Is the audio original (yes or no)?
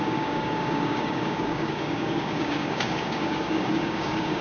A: no